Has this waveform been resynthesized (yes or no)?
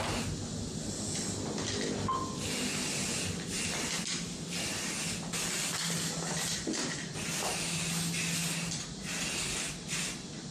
no